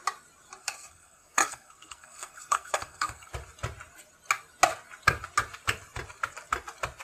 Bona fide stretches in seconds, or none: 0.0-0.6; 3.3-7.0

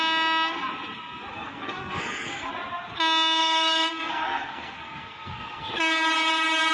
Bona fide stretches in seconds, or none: 0.0-1.3; 2.5-3.4; 5.7-6.7